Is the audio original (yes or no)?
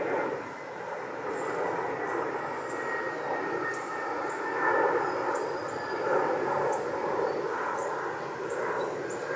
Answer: yes